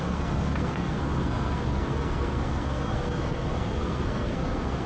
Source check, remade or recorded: remade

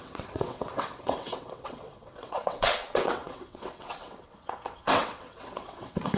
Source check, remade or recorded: remade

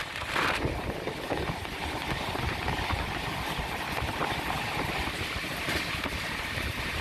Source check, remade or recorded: remade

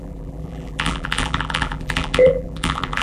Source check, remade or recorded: remade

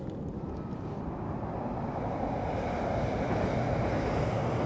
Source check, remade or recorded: recorded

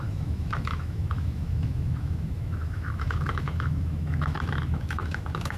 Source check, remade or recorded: remade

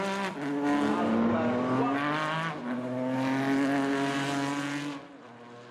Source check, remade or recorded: recorded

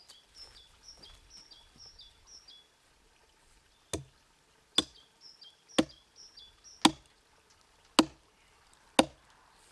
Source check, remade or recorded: recorded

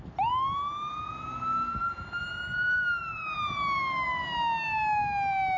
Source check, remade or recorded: recorded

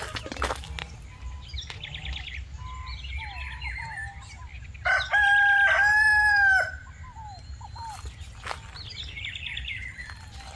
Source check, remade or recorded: recorded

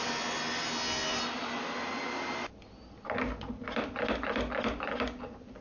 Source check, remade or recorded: recorded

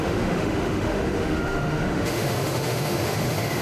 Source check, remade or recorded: remade